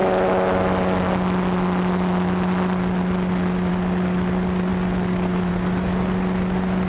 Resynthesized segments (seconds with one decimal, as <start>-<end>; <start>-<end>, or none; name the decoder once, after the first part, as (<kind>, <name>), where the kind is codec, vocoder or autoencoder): none